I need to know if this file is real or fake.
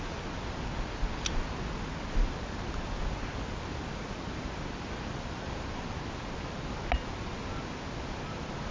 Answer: real